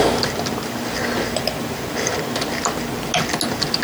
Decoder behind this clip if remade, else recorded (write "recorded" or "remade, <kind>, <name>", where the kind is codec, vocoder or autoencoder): recorded